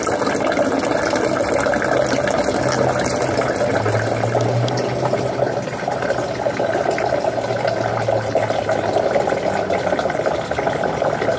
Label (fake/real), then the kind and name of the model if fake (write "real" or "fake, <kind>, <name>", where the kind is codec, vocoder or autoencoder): real